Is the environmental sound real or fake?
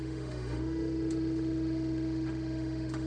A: fake